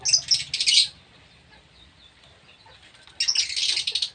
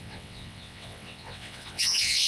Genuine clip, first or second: first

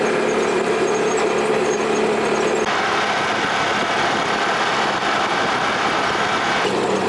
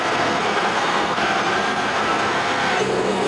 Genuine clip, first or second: first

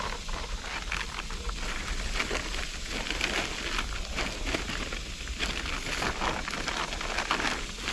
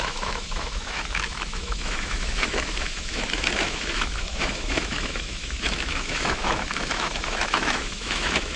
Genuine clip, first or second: first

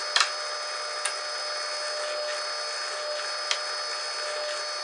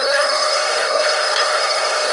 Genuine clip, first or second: first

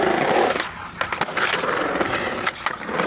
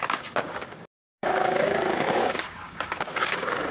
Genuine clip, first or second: first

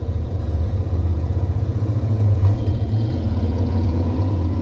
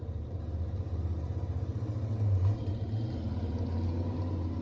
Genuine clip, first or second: second